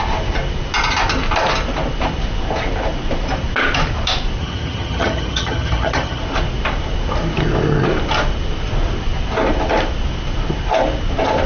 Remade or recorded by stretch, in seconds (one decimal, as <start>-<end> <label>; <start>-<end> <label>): 0.0-4.4 recorded; 4.4-6.2 remade; 6.2-11.5 recorded